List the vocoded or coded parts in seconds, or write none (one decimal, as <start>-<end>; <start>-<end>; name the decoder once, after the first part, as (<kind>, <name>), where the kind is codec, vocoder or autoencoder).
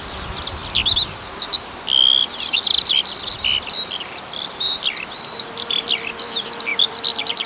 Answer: 2.2-6.1 (vocoder, BigVGAN v2)